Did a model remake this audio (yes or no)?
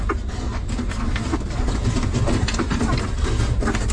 no